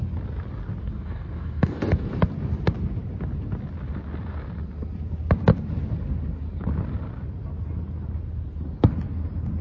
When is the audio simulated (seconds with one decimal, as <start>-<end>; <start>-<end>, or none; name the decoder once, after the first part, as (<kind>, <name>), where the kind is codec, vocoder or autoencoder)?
0.8-2.1 (codec, DAC)